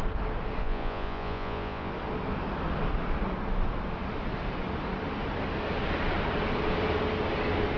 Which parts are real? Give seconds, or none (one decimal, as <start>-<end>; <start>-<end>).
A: 0.0-0.6; 1.9-7.8